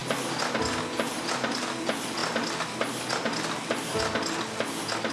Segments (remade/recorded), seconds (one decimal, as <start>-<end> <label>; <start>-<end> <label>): 0.0-5.1 recorded